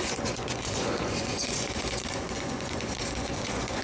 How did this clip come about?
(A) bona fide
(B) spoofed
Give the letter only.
B